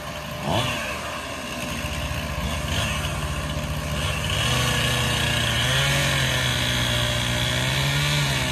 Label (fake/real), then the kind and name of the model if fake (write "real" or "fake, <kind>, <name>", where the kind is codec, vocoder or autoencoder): real